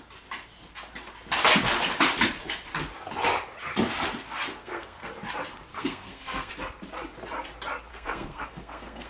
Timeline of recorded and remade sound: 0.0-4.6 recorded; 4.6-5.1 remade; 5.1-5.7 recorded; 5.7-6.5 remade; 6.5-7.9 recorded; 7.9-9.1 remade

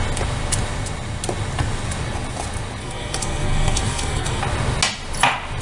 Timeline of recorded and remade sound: 0.0-2.8 recorded; 2.8-4.4 remade; 4.4-5.6 recorded

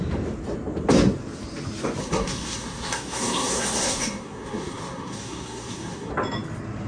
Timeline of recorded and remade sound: 0.0-2.0 recorded; 2.0-6.1 remade; 6.1-6.9 recorded

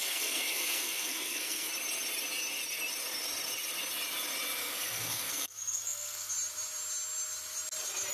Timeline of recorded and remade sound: 0.0-1.7 remade; 1.7-4.6 recorded; 4.6-6.3 remade; 6.3-8.1 recorded